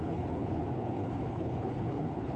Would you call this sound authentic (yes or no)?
no